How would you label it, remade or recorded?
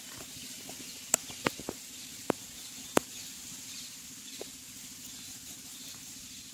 remade